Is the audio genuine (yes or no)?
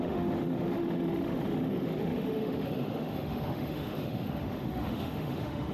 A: no